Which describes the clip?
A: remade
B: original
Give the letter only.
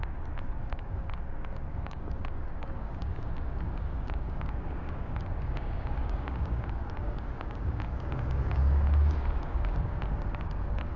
A